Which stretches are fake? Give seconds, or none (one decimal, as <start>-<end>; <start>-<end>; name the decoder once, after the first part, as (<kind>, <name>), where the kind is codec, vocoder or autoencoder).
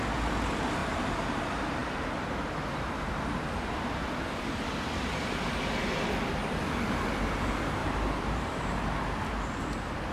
0.8-1.4 (vocoder, BigVGAN v2); 7.8-8.6